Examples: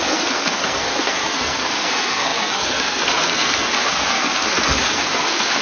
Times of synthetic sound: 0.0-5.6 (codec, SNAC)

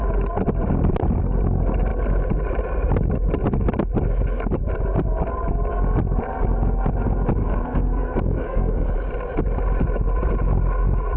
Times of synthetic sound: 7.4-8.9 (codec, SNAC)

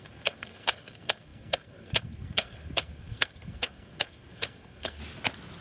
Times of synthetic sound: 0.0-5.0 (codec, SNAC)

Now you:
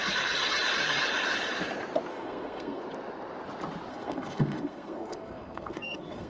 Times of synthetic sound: 2.1-2.8 (codec, SNAC); 3.9-6.3